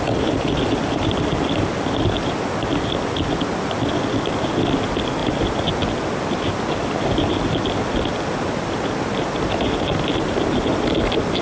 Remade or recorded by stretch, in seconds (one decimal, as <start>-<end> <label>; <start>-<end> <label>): 0.0-11.4 recorded